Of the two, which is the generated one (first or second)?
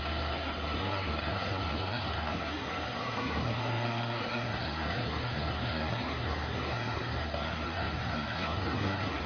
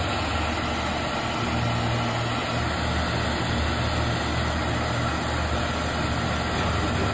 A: first